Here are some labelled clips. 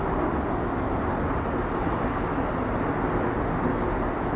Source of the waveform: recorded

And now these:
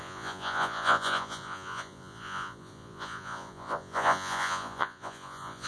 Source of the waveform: remade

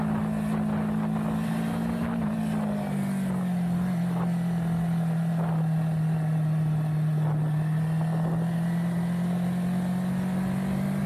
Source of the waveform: recorded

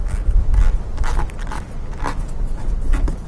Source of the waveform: recorded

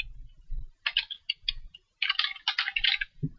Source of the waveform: recorded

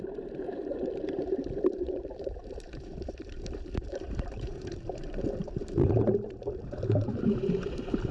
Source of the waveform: remade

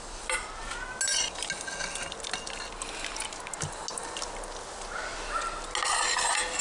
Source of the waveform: recorded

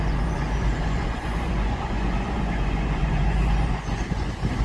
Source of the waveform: remade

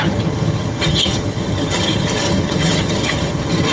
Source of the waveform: remade